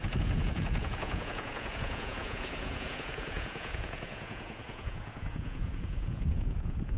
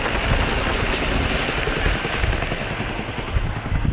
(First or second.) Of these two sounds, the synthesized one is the first